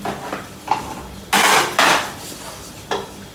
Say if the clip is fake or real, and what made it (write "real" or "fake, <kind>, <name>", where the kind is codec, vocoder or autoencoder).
real